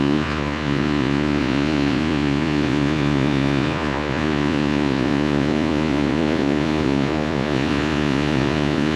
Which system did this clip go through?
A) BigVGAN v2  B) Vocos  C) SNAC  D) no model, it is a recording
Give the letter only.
B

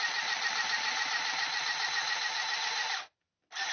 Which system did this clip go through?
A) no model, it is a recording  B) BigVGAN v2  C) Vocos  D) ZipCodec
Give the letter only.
A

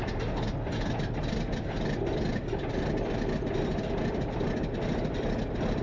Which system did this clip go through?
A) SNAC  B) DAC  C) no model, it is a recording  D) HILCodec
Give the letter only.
C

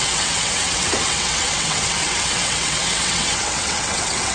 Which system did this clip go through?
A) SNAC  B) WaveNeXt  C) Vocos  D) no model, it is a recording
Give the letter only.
B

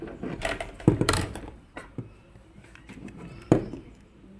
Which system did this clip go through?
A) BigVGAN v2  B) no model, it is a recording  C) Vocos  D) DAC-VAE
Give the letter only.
A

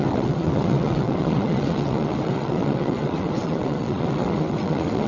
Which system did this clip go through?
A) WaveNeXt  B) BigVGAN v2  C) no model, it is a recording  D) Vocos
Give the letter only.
A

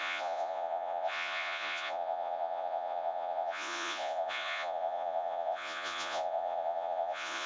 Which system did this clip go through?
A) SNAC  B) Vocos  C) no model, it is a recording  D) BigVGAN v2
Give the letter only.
B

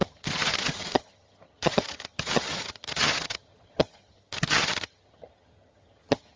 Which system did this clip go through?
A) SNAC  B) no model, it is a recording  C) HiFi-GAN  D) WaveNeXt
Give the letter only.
C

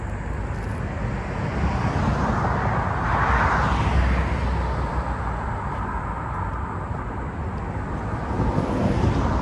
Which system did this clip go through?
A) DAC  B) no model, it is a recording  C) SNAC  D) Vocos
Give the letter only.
B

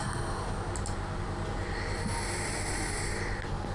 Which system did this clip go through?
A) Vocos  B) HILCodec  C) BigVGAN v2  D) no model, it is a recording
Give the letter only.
D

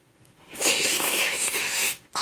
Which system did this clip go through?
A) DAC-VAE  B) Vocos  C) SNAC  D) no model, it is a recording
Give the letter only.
A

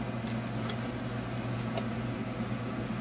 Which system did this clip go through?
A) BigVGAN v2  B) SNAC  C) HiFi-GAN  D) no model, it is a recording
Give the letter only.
D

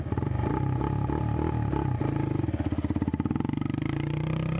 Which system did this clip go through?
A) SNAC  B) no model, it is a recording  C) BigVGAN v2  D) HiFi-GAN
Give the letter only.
B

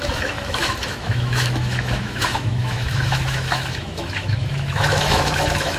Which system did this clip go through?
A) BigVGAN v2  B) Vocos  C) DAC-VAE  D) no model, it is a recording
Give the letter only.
C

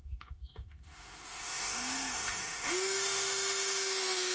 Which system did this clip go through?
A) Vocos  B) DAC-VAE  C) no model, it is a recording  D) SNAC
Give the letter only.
B